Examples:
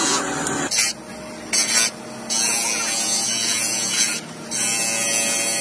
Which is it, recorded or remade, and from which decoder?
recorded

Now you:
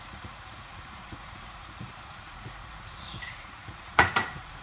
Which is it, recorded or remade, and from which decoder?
remade, vocoder, Vocos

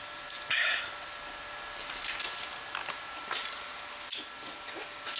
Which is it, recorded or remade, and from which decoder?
recorded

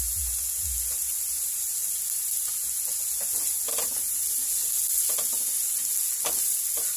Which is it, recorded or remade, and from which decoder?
recorded